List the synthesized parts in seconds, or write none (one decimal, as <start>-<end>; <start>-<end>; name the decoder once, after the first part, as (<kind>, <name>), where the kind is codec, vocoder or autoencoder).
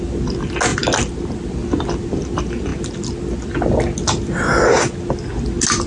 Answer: none